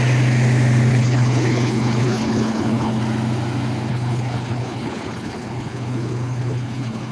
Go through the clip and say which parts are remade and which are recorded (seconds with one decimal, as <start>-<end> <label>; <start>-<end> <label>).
0.0-0.9 recorded; 0.9-3.0 remade; 3.0-3.9 recorded; 3.9-7.1 remade